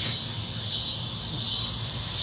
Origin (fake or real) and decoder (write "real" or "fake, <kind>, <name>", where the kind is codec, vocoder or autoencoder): real